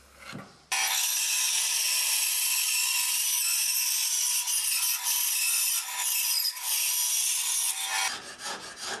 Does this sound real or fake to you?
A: real